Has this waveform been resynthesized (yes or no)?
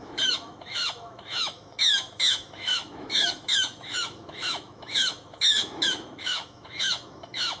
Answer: yes